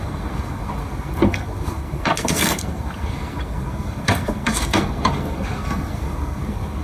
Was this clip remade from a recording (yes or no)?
yes